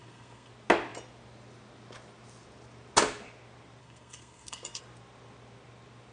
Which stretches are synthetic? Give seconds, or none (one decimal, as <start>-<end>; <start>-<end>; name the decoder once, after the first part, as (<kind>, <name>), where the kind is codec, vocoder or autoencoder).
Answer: 0.0-0.5 (codec, SNAC); 3.8-4.8